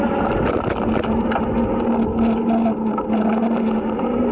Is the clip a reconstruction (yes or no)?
no